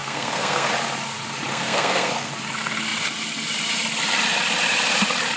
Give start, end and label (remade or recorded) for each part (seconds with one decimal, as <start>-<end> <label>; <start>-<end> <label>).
0.0-0.7 remade; 0.7-1.5 recorded; 1.5-2.3 remade; 2.3-5.4 recorded